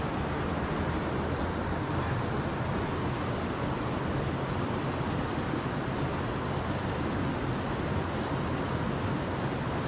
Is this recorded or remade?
recorded